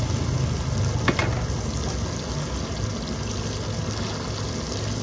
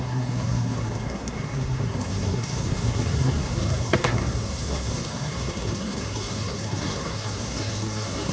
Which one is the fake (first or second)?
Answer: second